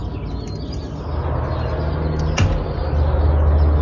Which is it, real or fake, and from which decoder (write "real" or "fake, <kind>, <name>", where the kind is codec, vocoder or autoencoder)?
real